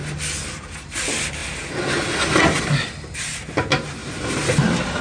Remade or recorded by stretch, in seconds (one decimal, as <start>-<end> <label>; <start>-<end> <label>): 0.0-5.0 recorded